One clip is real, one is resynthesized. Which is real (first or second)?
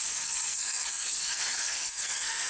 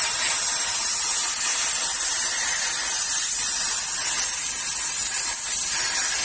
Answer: second